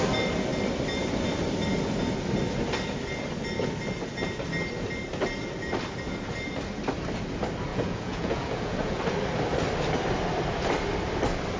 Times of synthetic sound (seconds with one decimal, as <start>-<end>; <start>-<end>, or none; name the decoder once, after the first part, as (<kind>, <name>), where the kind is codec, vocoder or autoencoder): 7.7-9.0 (vocoder, Vocos)